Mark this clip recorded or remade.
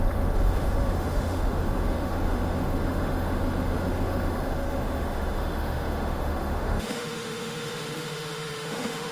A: remade